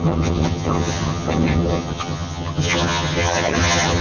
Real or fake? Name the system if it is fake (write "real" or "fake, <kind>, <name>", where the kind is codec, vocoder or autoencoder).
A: fake, vocoder, HiFi-GAN